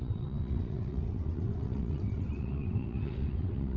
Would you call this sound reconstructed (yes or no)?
yes